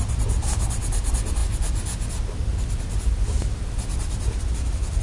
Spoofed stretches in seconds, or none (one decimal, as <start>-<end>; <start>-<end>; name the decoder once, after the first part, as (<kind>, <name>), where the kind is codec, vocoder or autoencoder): none